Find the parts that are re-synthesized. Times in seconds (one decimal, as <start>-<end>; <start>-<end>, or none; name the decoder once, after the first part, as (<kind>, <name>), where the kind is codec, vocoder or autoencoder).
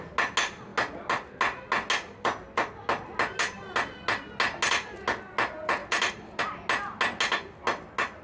none